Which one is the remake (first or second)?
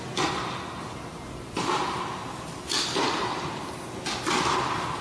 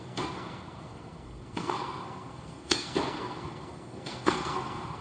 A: second